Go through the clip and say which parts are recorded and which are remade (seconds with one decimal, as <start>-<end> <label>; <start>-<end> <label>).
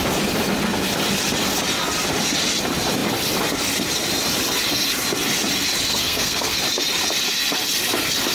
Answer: 0.0-5.9 recorded; 5.9-6.6 remade; 6.6-8.3 recorded